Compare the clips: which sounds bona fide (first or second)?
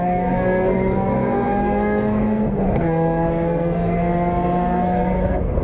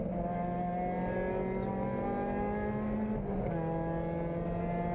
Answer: second